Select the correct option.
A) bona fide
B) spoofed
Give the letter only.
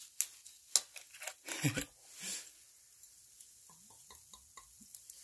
A